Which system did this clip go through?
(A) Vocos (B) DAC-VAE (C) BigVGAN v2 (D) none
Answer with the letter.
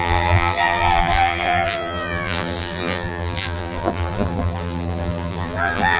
C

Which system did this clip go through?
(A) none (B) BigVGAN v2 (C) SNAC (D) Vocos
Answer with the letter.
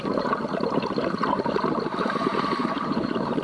B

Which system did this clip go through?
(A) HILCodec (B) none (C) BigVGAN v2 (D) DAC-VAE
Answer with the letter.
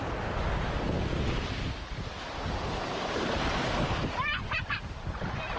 C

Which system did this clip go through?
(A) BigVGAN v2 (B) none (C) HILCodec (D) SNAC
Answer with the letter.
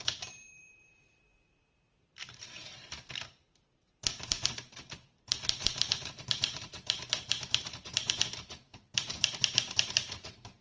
A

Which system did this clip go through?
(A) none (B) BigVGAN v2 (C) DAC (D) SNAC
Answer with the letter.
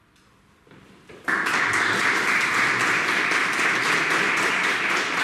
B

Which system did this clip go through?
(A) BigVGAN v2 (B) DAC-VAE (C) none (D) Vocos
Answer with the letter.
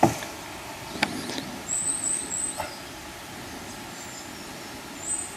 C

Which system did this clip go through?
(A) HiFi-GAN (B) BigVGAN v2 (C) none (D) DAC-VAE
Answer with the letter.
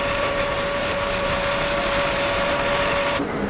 B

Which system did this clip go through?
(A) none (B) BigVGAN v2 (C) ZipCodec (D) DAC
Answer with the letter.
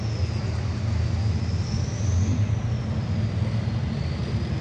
A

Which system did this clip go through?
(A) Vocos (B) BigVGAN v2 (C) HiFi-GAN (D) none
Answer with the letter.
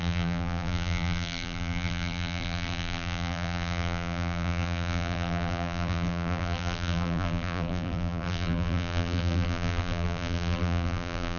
B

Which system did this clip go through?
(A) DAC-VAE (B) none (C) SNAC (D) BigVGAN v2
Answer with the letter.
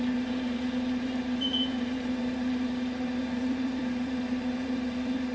D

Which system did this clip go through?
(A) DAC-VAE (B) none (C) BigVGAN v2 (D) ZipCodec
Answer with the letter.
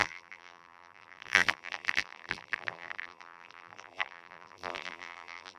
C